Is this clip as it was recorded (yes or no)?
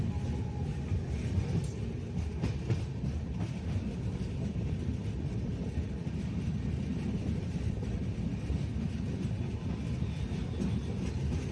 yes